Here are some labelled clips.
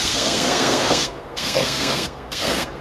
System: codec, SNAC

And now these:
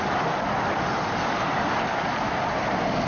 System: none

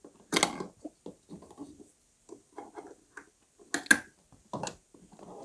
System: none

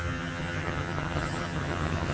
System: vocoder, HiFi-GAN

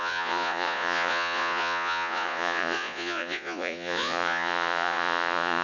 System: vocoder, Vocos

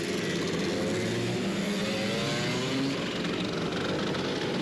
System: none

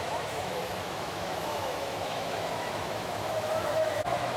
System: autoencoder, DAC-VAE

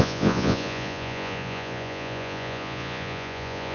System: vocoder, Vocos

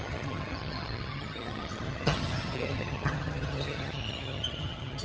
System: vocoder, HiFi-GAN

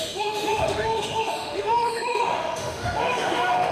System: autoencoder, DAC-VAE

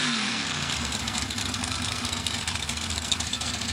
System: codec, SNAC